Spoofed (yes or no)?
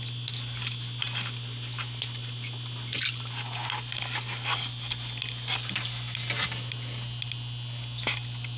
no